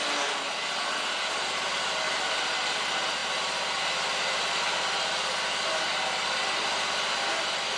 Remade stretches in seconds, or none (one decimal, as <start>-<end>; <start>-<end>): none